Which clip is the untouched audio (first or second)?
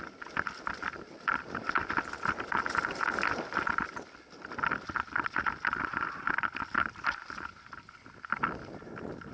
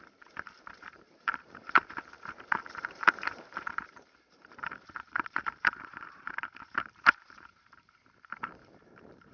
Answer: first